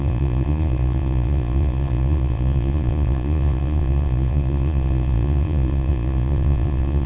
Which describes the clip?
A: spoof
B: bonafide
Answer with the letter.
A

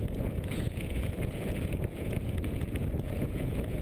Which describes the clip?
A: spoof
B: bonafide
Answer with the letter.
A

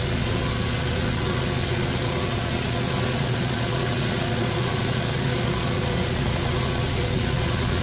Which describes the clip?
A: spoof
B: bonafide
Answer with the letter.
A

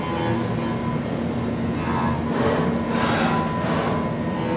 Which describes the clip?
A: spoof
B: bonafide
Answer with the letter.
B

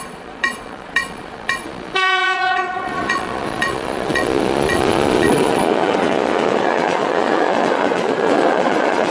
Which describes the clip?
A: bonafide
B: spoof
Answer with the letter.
B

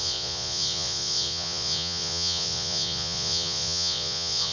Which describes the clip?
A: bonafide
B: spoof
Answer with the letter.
B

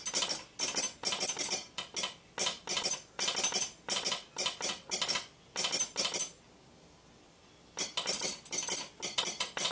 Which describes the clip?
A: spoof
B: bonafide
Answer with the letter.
B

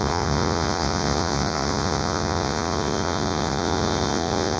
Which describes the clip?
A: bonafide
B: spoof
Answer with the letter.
B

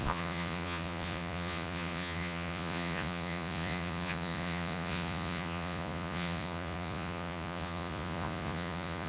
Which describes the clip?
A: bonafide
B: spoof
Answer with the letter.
B